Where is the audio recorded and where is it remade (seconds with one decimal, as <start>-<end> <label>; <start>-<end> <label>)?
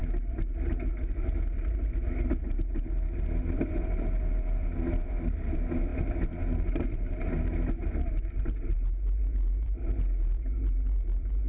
0.0-3.4 recorded; 3.4-11.5 remade